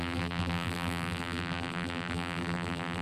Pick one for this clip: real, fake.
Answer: fake